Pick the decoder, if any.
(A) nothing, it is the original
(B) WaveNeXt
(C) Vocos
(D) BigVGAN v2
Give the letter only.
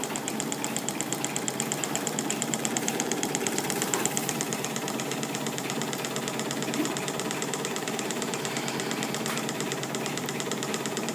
D